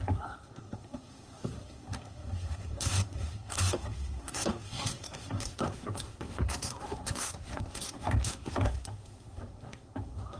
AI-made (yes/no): yes